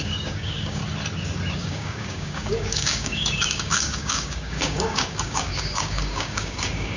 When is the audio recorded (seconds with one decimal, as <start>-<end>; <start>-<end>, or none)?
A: 0.8-1.5